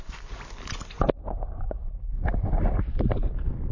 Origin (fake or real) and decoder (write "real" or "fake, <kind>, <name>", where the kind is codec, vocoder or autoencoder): real